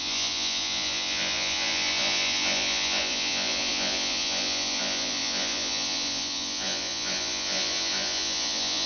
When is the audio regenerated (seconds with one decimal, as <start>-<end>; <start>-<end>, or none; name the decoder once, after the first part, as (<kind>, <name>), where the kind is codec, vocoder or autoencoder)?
0.0-8.9 (vocoder, Vocos)